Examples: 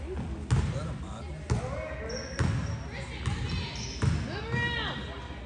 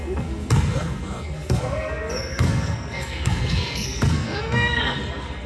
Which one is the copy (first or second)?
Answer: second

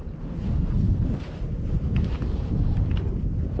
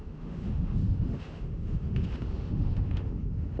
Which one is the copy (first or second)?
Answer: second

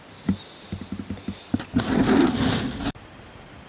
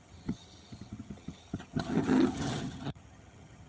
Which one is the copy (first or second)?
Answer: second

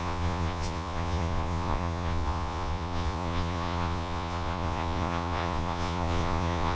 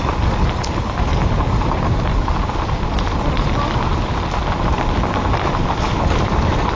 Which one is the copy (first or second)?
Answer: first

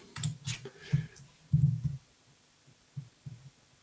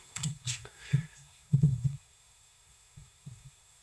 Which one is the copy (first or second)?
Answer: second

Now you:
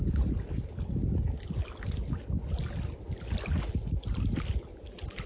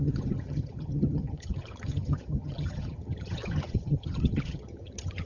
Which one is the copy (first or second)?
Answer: second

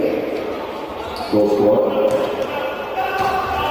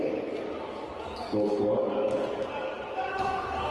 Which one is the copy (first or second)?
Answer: second